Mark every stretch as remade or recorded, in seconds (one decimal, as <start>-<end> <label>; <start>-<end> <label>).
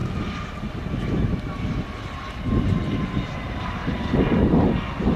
0.0-5.2 recorded